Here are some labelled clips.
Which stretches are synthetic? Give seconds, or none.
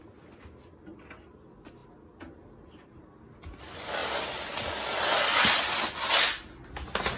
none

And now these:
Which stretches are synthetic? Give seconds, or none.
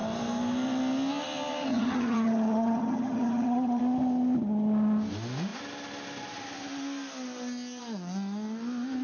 1.7-3.8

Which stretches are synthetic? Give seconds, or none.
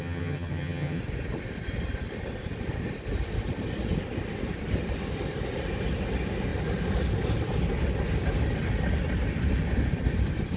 0.0-1.0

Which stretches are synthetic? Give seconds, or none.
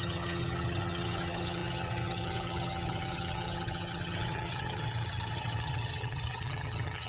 0.0-7.1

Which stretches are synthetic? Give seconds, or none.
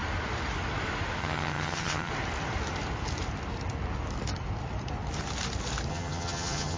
1.2-2.1; 5.9-6.8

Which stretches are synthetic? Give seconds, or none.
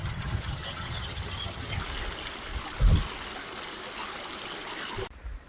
0.0-1.8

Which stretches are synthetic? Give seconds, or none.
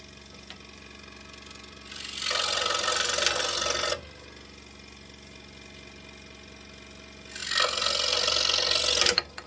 none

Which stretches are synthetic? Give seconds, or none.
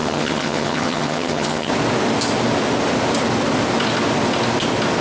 0.0-1.7